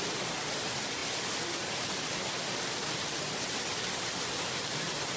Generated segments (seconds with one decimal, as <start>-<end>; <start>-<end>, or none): none